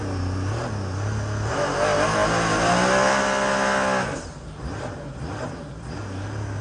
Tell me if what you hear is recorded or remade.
recorded